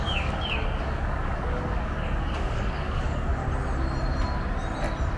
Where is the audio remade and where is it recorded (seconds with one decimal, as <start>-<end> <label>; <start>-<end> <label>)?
0.0-3.4 remade; 3.4-5.2 recorded